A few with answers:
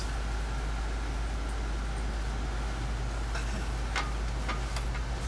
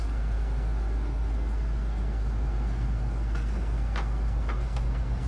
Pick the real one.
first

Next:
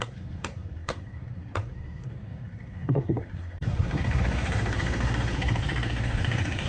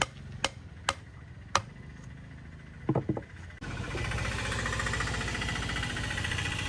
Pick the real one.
second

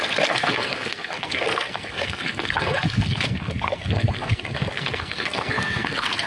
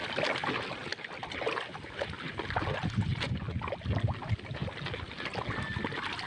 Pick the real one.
second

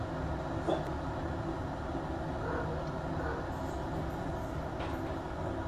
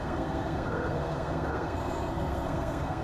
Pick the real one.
first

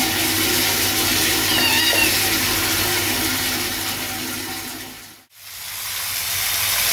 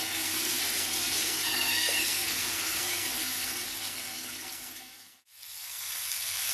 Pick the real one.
first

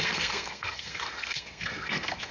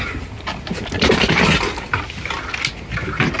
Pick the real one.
second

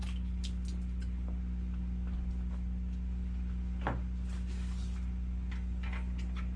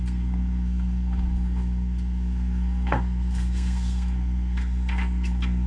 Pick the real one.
first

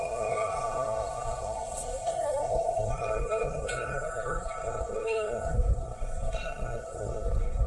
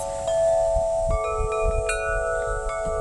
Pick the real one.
second